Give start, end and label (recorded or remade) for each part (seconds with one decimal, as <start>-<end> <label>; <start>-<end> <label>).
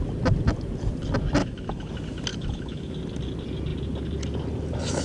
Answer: 0.0-1.4 recorded; 1.4-1.9 remade; 1.9-2.3 recorded; 2.3-2.9 remade; 2.9-5.0 recorded